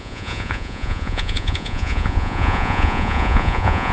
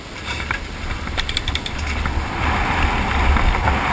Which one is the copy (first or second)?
first